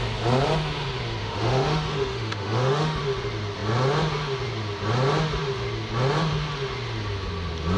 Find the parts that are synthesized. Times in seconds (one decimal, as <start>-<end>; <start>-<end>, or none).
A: 1.2-3.0